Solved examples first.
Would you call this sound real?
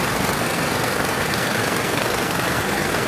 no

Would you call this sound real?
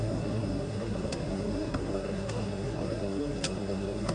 no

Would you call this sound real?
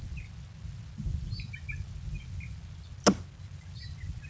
yes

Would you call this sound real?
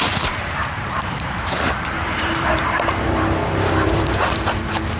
no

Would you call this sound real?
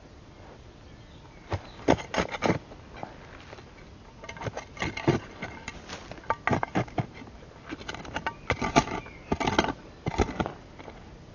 yes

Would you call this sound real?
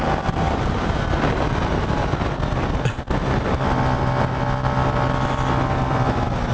yes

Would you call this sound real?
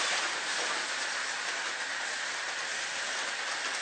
yes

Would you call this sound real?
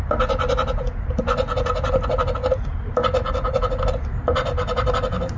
yes